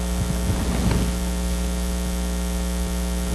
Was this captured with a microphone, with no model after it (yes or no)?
yes